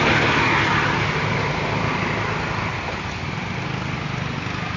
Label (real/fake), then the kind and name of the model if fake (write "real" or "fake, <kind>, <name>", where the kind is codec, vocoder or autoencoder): real